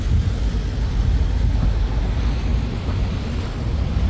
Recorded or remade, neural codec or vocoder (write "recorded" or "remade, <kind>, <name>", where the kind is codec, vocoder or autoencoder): recorded